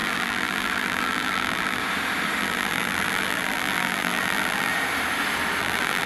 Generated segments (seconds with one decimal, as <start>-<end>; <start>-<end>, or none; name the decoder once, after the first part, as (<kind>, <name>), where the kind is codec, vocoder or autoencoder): 0.0-1.8 (vocoder, BigVGAN v2); 2.4-4.7; 5.6-6.1